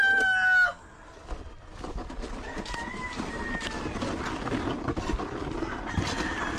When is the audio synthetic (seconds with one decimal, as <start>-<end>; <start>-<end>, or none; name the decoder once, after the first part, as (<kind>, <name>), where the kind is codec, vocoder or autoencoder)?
none